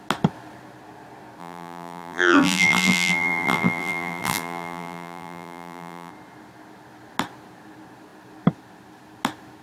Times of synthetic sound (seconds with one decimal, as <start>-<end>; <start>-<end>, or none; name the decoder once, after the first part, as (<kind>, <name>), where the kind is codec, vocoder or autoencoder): 1.4-6.1 (vocoder, BigVGAN v2)